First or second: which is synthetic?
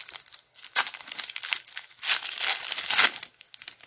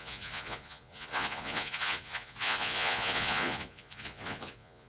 second